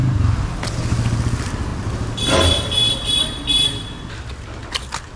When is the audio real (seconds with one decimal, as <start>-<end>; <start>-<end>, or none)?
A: 0.0-5.2